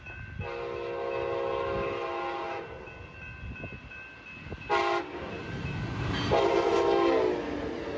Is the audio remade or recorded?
recorded